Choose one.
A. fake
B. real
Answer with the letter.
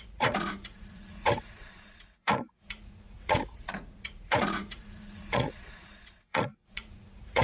A